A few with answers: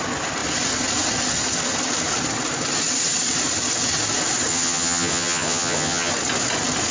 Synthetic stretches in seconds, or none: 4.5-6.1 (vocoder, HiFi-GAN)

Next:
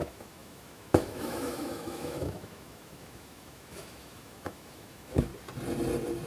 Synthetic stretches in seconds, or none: 0.0-5.3 (autoencoder, DAC-VAE)